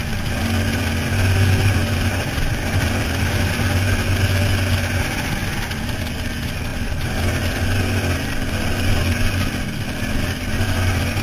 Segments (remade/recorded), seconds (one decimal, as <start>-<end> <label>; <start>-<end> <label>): 0.0-1.8 recorded; 1.8-3.6 remade; 3.6-6.7 recorded; 6.7-7.6 remade; 7.6-11.2 recorded